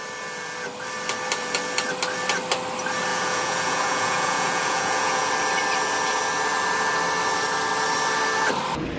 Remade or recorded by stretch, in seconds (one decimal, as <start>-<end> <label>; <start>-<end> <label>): 0.0-3.1 recorded; 3.1-5.3 remade; 5.3-9.0 recorded